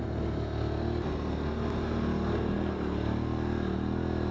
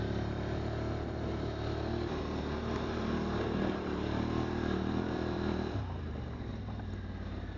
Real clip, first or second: first